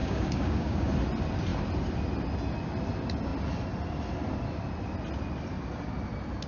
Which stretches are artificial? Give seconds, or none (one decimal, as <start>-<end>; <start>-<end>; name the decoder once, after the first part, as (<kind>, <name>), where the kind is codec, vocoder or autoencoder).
0.0-0.9 (codec, DAC)